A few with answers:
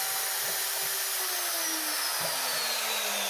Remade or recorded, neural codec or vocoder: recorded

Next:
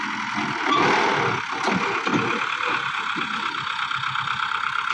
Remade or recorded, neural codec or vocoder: recorded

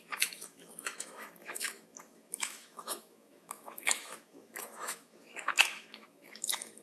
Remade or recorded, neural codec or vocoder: remade, autoencoder, DAC-VAE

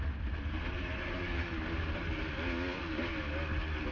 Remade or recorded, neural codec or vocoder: recorded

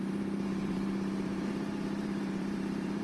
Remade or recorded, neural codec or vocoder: remade, vocoder, BigVGAN v2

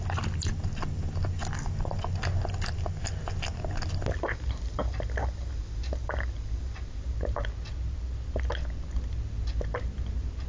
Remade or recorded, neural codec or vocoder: recorded